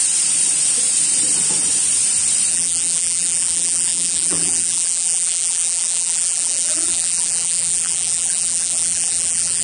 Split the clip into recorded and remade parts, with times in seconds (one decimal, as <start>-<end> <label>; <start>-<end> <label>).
0.0-2.5 recorded; 2.5-9.6 remade